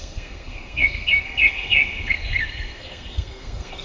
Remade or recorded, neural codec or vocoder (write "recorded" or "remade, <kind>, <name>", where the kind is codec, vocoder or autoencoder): remade, codec, SNAC